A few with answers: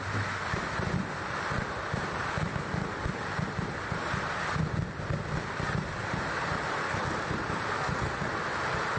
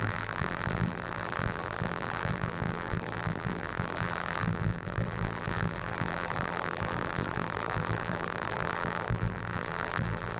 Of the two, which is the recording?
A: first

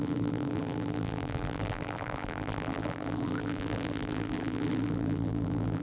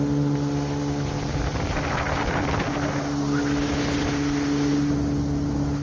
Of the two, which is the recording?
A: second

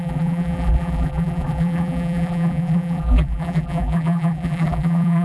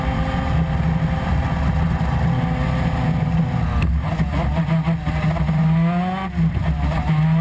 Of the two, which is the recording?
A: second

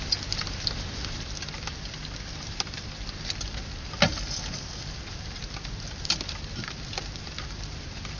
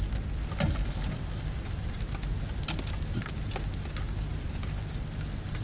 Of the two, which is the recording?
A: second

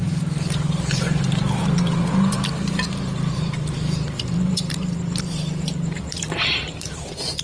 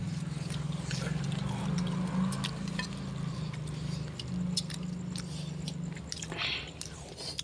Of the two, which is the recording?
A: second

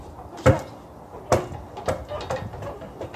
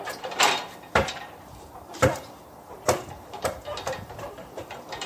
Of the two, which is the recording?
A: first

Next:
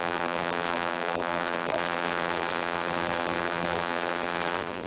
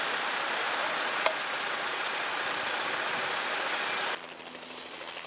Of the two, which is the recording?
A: second